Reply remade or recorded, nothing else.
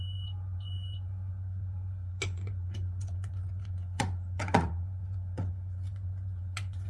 remade